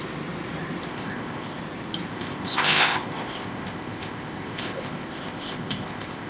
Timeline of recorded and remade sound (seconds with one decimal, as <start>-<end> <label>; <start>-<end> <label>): 0.0-0.9 recorded; 0.9-1.6 remade; 1.6-2.1 recorded; 2.1-6.3 remade